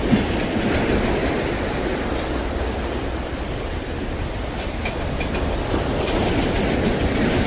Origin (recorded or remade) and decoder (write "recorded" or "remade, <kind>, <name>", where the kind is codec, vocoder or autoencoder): recorded